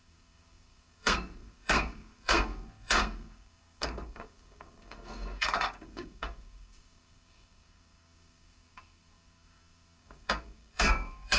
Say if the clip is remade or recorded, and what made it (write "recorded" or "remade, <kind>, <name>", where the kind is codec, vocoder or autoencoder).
remade, codec, SNAC